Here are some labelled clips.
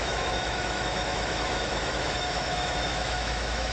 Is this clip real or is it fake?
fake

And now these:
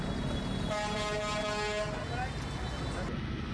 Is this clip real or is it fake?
real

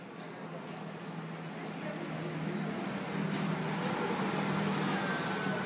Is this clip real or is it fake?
real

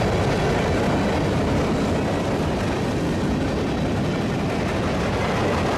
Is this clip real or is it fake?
real